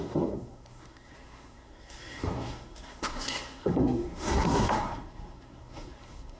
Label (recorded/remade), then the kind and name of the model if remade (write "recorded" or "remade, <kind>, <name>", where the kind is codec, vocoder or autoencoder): remade, codec, SNAC